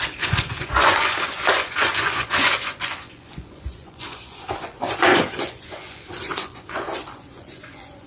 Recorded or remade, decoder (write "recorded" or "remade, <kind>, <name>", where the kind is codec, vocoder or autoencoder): remade, vocoder, Vocos